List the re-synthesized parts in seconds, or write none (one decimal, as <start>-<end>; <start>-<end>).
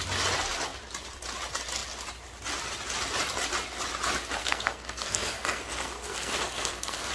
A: 4.4-7.1